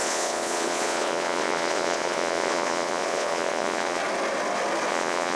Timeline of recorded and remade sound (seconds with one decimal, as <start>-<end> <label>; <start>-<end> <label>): 0.0-4.0 remade; 4.0-4.9 recorded; 4.9-5.4 remade